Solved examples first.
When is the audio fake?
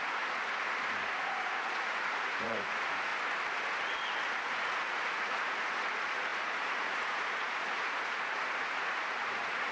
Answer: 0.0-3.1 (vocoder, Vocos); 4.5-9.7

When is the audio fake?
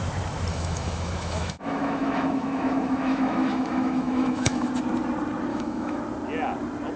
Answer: 0.5-4.7 (autoencoder, DAC-VAE); 5.5-6.0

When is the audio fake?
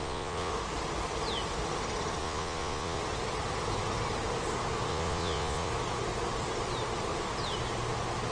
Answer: 0.0-0.5 (vocoder, Vocos); 2.2-3.0; 4.9-5.7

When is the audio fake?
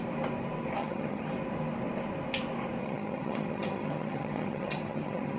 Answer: 0.8-1.3 (vocoder, HiFi-GAN); 2.8-5.4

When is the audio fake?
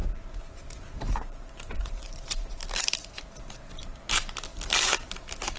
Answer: 0.0-3.4 (vocoder, BigVGAN v2)